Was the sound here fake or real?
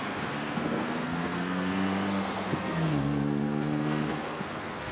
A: fake